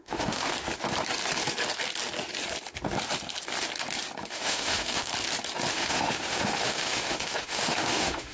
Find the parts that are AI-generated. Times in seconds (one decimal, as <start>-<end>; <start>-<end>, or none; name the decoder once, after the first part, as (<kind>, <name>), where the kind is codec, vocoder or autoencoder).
0.0-0.5 (autoencoder, DAC-VAE); 4.3-5.1; 5.7-8.3